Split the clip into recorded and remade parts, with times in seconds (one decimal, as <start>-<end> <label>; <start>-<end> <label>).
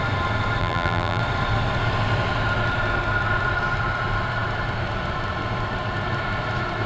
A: 0.0-0.6 recorded; 0.6-1.2 remade; 1.2-6.9 recorded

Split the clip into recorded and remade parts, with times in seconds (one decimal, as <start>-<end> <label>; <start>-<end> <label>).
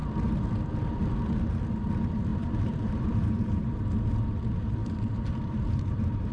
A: 0.0-2.3 recorded; 2.3-3.8 remade; 3.8-4.8 recorded; 4.8-6.3 remade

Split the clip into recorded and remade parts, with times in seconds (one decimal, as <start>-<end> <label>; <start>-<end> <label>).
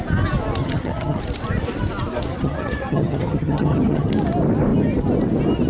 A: 0.0-0.6 recorded; 0.6-1.2 remade; 1.2-2.3 recorded; 2.3-4.1 remade; 4.1-5.7 recorded